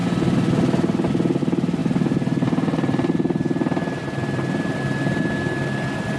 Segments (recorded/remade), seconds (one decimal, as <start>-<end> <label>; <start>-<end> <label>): 0.0-1.8 recorded; 1.8-5.2 remade; 5.2-6.2 recorded